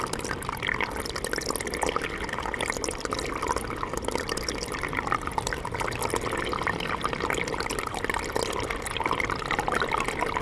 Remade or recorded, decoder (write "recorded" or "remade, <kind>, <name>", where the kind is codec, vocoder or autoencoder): recorded